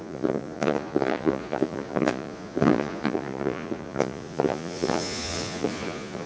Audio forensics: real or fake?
fake